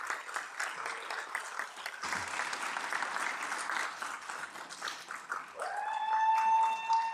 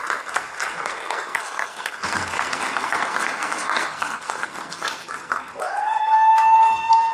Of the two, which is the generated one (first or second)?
second